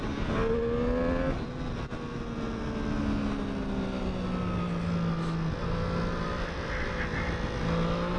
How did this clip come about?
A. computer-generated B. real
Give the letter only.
B